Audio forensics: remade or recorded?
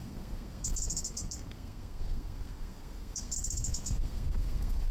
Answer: remade